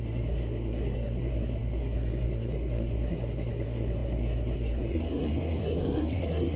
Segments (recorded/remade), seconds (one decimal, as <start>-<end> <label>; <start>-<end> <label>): 0.0-6.6 remade